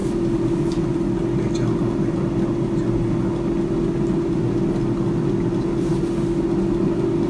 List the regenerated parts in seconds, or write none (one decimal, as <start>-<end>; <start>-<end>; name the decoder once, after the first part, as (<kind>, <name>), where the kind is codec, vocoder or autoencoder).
none